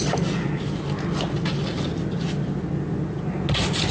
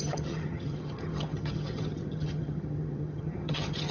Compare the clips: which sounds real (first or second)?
first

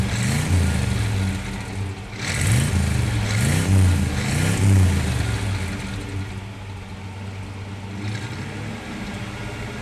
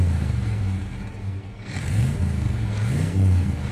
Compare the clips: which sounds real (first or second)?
first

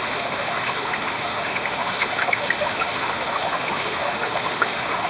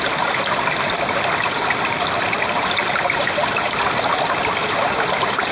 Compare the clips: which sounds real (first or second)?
second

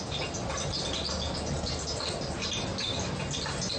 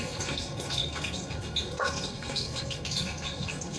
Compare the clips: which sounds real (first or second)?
first